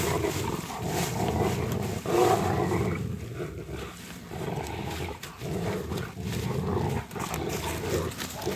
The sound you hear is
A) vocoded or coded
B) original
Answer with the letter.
B